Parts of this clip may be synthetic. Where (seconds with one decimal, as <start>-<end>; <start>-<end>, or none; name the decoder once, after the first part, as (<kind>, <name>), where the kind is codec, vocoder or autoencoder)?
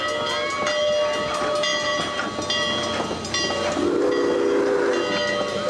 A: none